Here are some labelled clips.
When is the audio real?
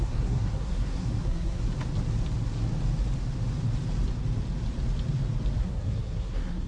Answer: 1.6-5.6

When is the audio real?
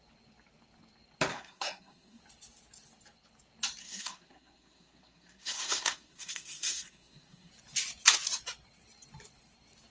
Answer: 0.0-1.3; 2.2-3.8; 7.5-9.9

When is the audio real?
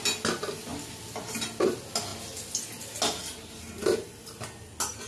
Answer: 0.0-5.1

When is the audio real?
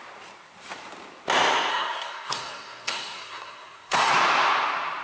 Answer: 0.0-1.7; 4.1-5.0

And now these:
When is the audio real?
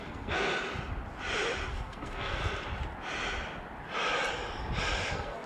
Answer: 0.5-1.7; 2.4-5.1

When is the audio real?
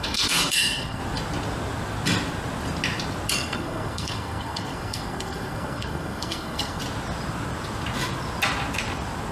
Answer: 1.0-3.3; 6.8-9.3